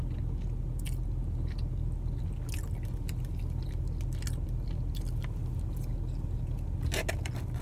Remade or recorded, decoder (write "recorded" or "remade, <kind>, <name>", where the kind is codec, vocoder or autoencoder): recorded